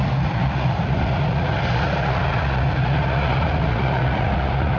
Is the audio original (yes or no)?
no